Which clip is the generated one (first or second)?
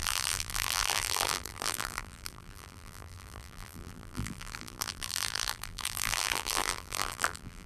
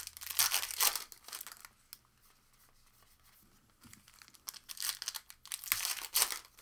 first